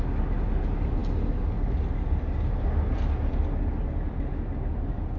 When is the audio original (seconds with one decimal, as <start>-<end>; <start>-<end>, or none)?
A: 0.0-5.2